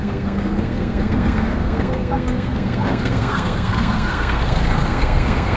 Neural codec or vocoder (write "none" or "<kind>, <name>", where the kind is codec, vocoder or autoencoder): codec, SNAC